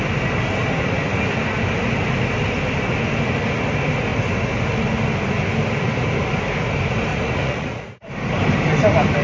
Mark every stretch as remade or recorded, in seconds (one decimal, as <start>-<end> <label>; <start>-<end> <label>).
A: 0.0-7.1 recorded; 7.1-8.1 remade; 8.1-9.2 recorded